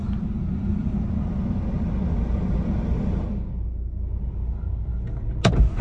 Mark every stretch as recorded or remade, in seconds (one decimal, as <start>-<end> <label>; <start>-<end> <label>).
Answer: 0.0-5.8 recorded